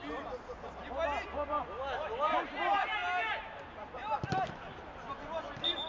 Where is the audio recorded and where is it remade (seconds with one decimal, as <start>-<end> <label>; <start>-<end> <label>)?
0.0-5.9 recorded